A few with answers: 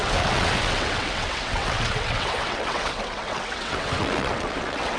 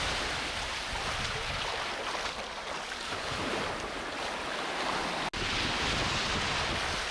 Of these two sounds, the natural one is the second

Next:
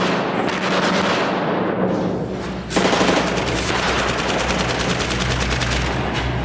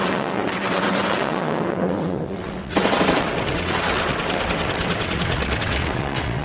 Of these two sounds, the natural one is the first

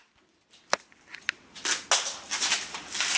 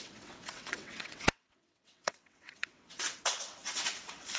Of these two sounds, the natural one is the first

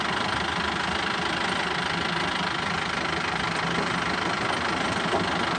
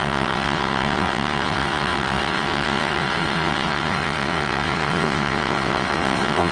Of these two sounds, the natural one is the first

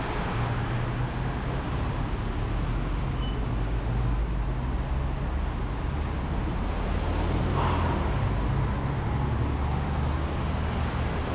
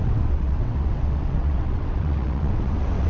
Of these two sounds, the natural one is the first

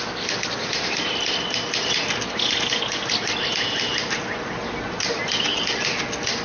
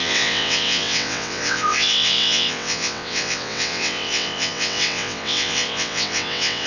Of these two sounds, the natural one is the first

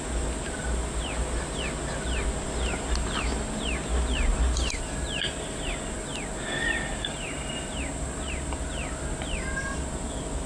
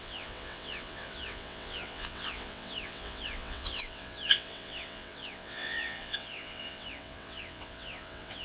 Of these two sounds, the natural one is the first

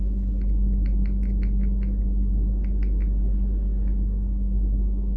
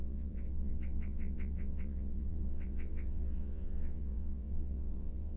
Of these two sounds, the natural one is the first